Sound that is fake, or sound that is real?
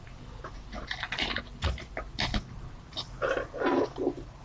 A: real